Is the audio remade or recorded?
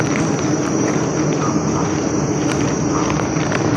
recorded